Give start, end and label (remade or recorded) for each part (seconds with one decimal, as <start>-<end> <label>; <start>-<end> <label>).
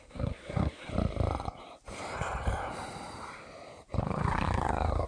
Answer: 0.0-0.9 remade; 0.9-4.0 recorded; 4.0-5.1 remade